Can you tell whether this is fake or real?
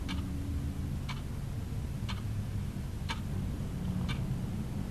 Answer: real